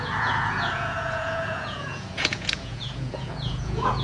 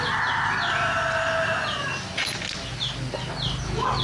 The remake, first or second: first